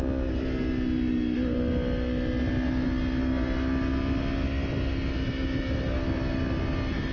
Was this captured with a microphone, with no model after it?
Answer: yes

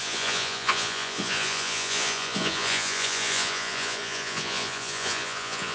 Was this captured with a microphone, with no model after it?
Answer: no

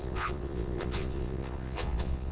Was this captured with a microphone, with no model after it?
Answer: no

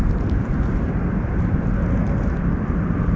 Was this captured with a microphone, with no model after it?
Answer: yes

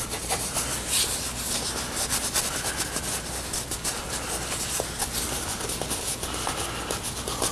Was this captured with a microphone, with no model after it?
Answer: yes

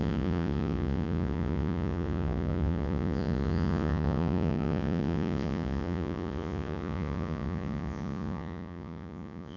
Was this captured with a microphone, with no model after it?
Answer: no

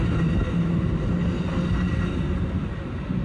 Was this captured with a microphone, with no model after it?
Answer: yes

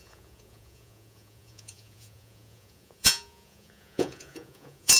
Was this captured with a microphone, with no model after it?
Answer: no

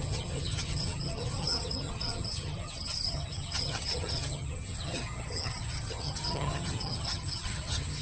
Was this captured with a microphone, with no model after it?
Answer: no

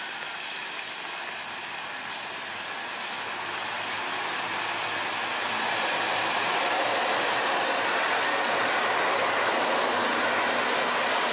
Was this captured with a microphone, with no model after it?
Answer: yes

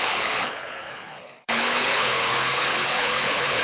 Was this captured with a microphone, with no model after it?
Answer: no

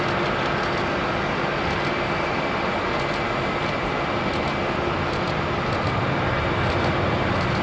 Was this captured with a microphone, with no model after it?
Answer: yes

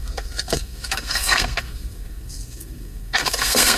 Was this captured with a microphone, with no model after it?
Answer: no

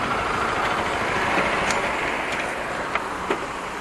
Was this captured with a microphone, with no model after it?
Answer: yes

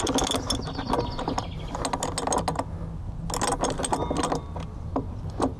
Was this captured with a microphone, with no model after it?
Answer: yes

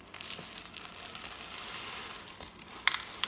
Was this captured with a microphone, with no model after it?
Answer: yes